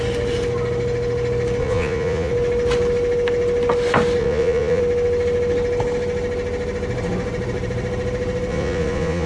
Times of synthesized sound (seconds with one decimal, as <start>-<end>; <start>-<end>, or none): 1.6-2.3; 4.2-4.8; 8.5-9.3